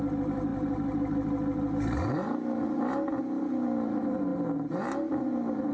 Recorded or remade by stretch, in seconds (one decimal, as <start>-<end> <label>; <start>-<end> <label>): 0.0-5.7 recorded